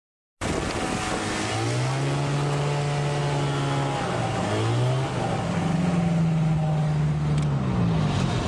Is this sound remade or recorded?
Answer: recorded